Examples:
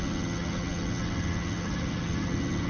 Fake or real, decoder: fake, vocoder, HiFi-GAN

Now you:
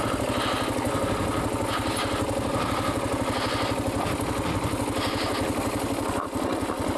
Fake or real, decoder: real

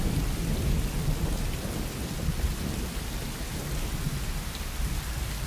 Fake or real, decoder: real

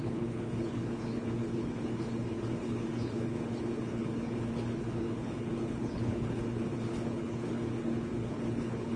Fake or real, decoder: fake, codec, HILCodec